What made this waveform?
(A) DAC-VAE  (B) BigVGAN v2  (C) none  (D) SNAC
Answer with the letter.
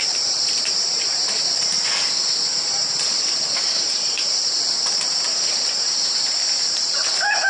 B